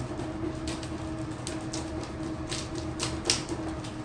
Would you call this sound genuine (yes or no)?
yes